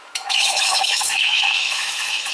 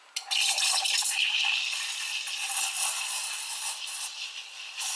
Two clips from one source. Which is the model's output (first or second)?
first